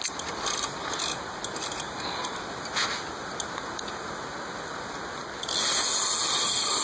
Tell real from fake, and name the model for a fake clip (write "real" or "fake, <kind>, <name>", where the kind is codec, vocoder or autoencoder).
real